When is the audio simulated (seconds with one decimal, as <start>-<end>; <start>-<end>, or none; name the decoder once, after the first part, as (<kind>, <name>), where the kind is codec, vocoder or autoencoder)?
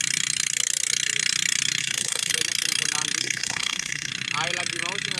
1.8-2.3 (codec, SNAC); 3.2-4.1